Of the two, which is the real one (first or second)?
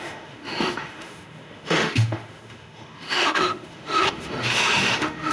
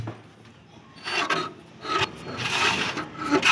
second